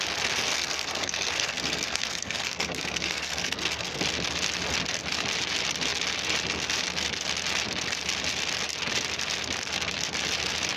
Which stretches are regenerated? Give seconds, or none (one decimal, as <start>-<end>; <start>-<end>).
0.5-4.0